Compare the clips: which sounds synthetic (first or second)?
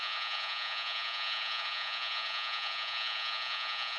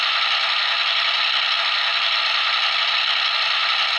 first